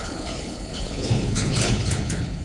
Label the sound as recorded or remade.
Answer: remade